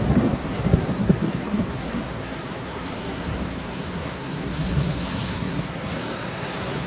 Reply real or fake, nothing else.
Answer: fake